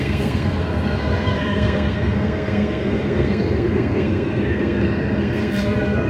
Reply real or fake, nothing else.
fake